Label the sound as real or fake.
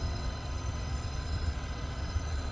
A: fake